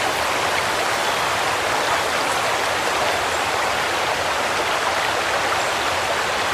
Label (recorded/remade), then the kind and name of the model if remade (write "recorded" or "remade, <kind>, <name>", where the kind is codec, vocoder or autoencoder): recorded